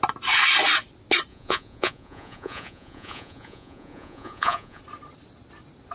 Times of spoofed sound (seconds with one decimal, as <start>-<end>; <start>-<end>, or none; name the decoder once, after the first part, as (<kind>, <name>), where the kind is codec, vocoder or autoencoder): 1.3-4.8 (vocoder, Vocos)